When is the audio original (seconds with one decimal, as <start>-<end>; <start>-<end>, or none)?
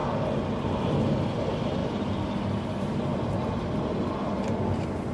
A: 0.0-0.8